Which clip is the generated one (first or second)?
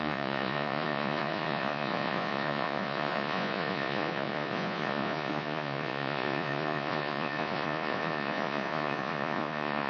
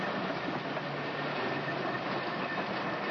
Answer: first